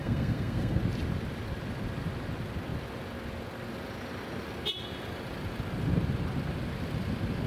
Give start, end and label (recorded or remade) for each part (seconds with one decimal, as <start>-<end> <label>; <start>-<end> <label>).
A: 0.0-0.8 remade; 0.8-7.5 recorded